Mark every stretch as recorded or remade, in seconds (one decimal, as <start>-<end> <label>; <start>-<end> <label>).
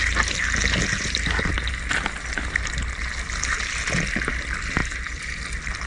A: 0.0-4.8 recorded; 4.8-5.4 remade; 5.4-5.9 recorded